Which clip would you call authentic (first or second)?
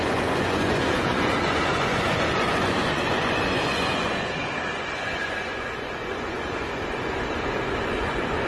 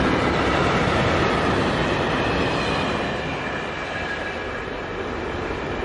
second